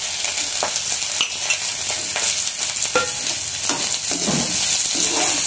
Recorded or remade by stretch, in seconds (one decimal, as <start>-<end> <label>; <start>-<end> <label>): 0.0-5.5 recorded